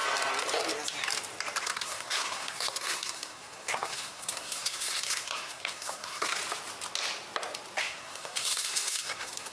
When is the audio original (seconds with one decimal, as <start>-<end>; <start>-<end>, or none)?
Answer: 0.0-1.6; 6.4-7.8

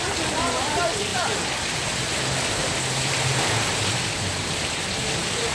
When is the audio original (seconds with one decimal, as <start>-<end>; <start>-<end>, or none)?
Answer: 0.0-5.5

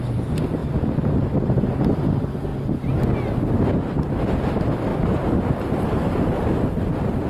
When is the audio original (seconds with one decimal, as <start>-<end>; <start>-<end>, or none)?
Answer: 0.0-0.6; 1.6-4.9; 6.5-7.3

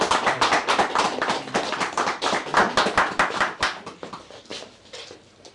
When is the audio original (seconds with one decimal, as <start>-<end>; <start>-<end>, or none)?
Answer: 2.5-3.4; 4.5-5.5

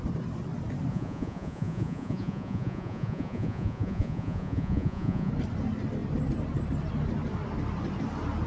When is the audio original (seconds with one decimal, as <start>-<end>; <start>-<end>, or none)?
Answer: 0.0-0.9; 5.3-8.5

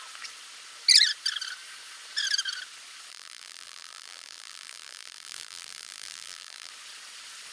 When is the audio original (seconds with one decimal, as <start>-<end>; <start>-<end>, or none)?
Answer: 0.0-3.1; 6.7-7.5

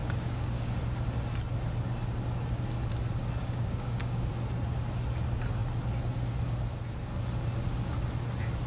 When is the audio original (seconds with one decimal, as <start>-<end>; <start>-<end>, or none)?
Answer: 0.8-3.4; 4.3-8.7

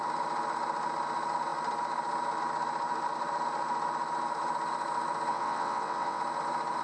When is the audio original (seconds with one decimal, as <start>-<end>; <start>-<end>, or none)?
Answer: 0.0-5.3; 6.2-6.8